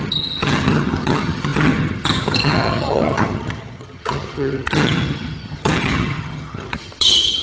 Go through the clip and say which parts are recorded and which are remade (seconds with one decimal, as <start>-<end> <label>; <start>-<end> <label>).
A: 0.0-7.4 remade